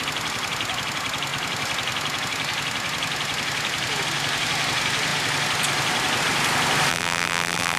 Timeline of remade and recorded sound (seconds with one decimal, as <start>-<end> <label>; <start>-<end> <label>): 0.0-6.9 recorded; 6.9-7.8 remade